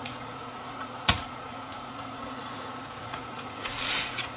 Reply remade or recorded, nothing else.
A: remade